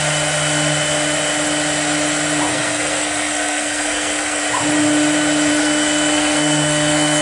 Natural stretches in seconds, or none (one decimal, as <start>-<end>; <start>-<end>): 0.0-2.5; 4.4-5.5